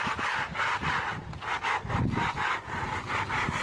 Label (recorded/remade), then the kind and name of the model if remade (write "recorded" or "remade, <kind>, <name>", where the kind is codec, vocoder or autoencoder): recorded